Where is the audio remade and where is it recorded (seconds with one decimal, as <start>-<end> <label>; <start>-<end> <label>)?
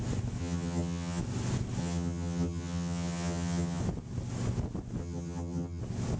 0.0-0.4 recorded; 0.4-1.2 remade; 1.2-1.8 recorded; 1.8-3.8 remade; 3.8-5.0 recorded; 5.0-5.8 remade; 5.8-6.2 recorded